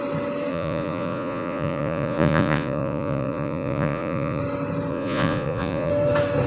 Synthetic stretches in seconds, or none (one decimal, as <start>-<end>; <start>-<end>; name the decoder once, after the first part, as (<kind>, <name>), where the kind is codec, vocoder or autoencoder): 0.5-4.4 (vocoder, Vocos); 4.9-5.9